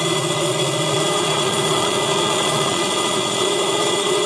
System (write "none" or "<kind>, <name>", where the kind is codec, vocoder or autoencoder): vocoder, Vocos